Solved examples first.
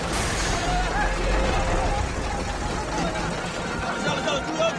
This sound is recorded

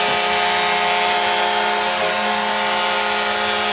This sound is recorded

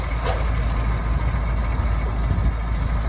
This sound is recorded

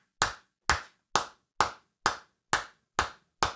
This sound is recorded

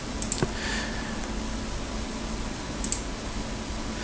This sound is recorded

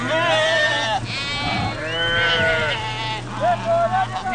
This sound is recorded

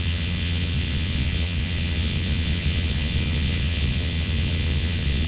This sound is remade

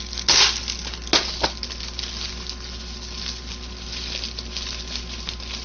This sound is recorded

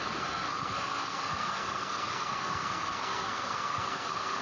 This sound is remade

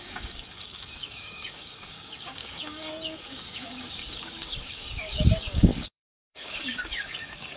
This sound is remade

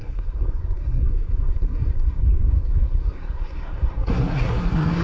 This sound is remade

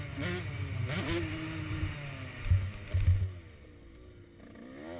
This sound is recorded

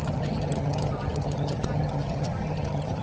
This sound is remade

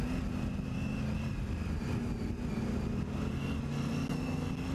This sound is recorded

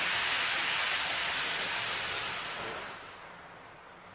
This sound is recorded